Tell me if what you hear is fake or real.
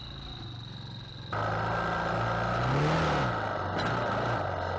real